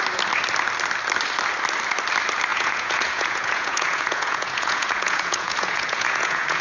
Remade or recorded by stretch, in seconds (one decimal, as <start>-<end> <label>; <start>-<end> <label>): 0.0-2.5 recorded; 2.5-6.6 remade